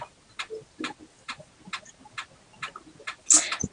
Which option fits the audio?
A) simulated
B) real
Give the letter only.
B